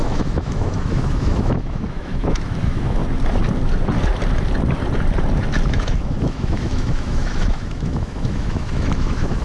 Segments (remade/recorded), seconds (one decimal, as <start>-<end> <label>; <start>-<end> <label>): 0.0-3.0 remade; 3.0-5.7 recorded; 5.7-9.4 remade